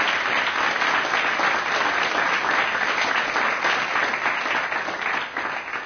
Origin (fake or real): real